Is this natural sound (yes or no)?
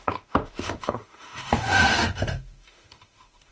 no